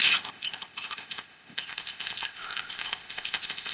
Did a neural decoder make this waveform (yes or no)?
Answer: yes